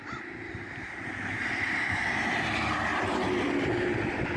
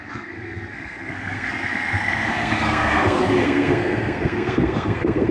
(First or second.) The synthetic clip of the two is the second